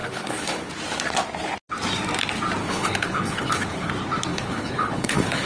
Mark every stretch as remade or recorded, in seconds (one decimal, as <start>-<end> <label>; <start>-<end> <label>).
0.0-0.7 remade; 0.7-2.6 recorded; 2.6-3.9 remade; 3.9-4.3 recorded; 4.3-5.5 remade